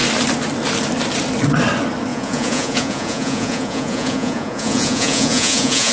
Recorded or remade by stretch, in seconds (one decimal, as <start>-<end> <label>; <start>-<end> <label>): 0.0-2.1 recorded; 2.1-5.9 remade